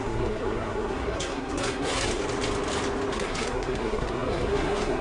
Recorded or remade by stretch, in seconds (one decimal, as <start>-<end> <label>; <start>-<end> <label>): 0.0-2.2 remade; 2.2-3.1 recorded; 3.1-5.0 remade